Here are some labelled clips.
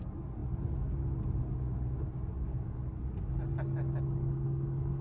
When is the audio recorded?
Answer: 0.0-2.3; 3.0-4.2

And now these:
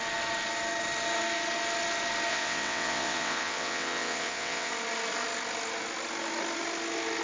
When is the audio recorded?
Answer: 0.0-2.3; 4.7-7.2